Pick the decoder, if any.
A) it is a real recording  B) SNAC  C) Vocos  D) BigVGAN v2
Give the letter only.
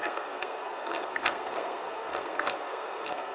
B